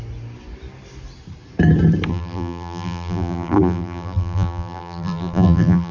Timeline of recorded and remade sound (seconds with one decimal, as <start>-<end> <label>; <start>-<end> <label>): 0.0-2.1 recorded; 2.1-5.9 remade